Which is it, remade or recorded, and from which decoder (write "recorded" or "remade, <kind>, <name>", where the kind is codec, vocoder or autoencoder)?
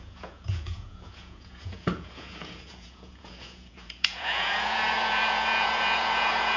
remade, vocoder, Vocos